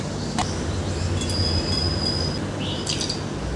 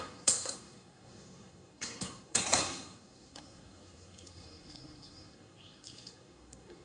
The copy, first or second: second